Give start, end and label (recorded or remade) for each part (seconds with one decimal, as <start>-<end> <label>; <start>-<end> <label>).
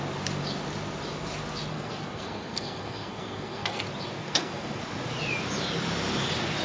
0.0-1.7 recorded; 1.7-3.8 remade; 3.8-4.2 recorded; 4.2-4.8 remade; 4.8-6.6 recorded